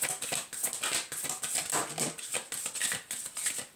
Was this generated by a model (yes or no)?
no